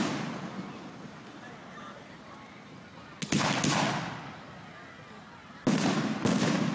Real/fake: real